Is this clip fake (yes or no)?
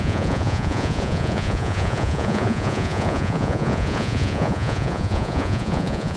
yes